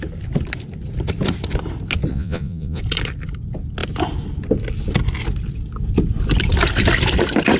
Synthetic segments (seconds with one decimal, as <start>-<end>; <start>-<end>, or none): 2.1-2.8